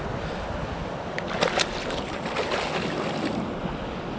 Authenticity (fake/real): real